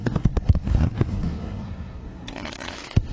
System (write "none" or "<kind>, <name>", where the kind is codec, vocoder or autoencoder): codec, SNAC